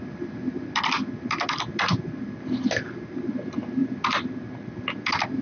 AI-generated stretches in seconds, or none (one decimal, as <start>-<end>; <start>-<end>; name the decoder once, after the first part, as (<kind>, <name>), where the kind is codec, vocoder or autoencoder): none